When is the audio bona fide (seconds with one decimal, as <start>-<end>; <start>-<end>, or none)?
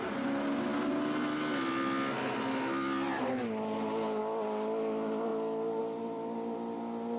0.0-7.2